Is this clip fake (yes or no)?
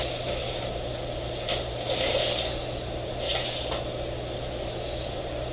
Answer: no